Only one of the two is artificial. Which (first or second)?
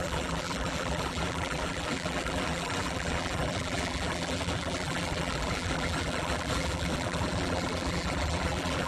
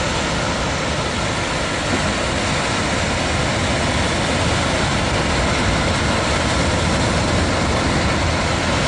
first